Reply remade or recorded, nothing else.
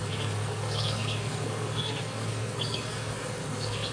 remade